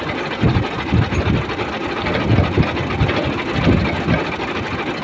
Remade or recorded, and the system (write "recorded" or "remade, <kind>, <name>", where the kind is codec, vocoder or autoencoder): recorded